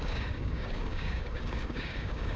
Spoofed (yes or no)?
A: yes